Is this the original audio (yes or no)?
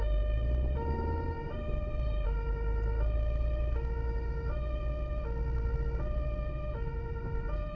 yes